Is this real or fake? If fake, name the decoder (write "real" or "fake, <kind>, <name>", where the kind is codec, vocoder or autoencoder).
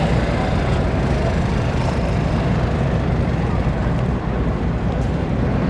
fake, vocoder, BigVGAN v2